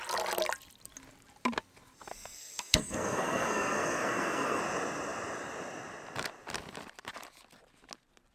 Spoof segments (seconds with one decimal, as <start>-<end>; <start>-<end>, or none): 2.1-4.6

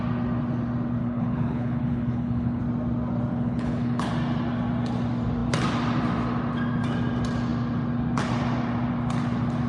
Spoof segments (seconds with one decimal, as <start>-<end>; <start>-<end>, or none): 1.0-2.6; 3.3-4.1

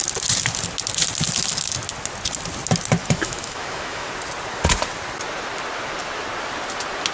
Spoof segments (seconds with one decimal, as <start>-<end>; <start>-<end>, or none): 3.0-4.1

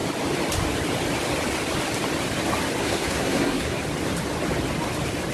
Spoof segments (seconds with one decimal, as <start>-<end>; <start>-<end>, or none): 2.8-3.8

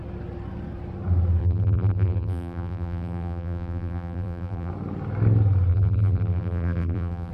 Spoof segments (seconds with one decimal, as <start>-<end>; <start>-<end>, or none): 1.4-4.7; 5.7-7.3

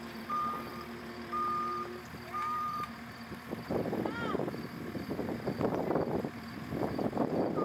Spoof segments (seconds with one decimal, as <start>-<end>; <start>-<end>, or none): 0.0-7.6